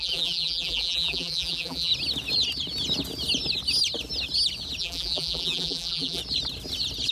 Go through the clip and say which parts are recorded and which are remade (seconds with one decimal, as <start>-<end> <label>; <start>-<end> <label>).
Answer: 0.0-1.9 remade; 1.9-4.8 recorded; 4.8-6.2 remade; 6.2-7.1 recorded